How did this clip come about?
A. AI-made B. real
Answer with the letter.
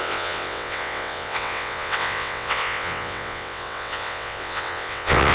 A